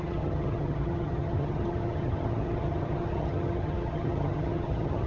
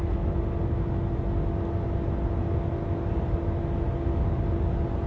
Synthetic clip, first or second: first